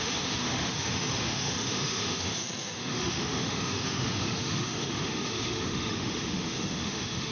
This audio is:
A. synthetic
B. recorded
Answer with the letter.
A